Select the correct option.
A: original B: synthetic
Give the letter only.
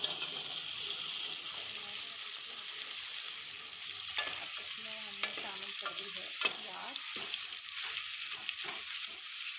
A